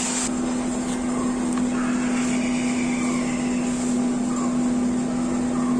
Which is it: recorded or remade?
recorded